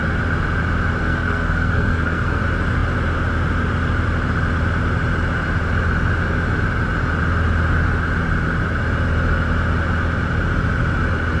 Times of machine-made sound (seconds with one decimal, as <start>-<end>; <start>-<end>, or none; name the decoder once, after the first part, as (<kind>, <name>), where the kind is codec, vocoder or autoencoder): 1.0-2.4 (codec, SNAC)